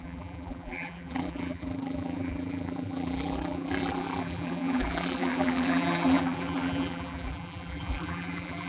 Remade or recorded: remade